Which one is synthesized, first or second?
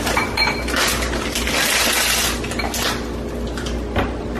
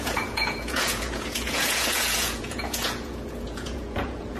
second